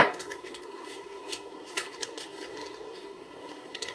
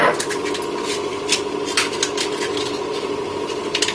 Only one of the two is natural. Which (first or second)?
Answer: second